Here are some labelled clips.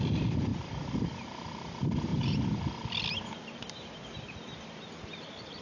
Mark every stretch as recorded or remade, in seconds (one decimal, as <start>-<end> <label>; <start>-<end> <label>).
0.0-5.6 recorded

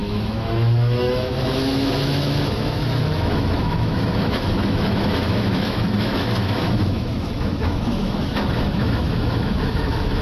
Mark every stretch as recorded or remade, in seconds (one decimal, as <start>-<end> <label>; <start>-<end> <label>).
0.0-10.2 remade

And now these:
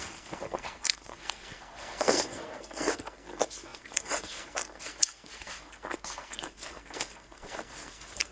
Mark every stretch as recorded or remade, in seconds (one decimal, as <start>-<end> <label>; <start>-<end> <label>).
0.0-8.3 remade

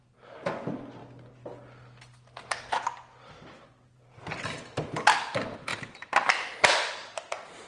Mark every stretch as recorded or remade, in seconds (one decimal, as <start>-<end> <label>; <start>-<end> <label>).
0.0-7.7 recorded

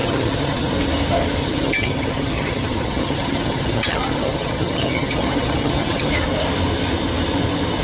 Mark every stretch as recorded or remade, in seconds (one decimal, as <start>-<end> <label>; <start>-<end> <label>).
0.0-0.7 remade; 0.7-1.4 recorded; 1.4-6.1 remade; 6.1-7.8 recorded

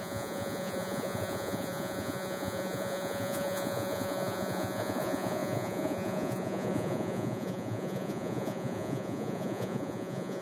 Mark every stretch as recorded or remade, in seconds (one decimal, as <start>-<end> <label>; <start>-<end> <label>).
0.0-10.4 remade

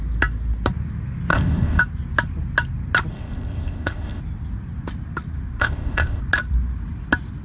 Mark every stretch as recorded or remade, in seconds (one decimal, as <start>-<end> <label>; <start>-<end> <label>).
0.0-1.3 recorded; 1.3-1.8 remade; 1.8-3.1 recorded; 3.1-4.2 remade; 4.2-5.6 recorded; 5.6-6.2 remade; 6.2-7.4 recorded

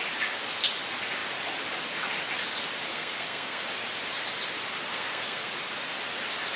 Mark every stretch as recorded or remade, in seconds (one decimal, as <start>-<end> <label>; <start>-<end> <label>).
0.0-2.9 recorded; 2.9-3.6 remade; 3.6-4.9 recorded; 4.9-5.5 remade; 5.5-6.6 recorded